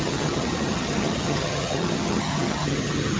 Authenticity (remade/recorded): remade